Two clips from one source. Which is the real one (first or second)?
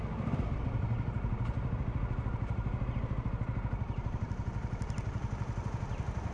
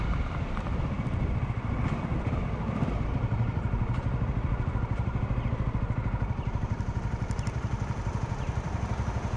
first